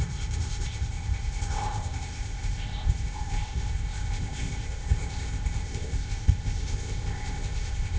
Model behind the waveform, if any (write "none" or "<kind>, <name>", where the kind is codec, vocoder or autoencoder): codec, ZipCodec